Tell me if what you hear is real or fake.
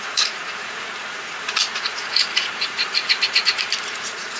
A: fake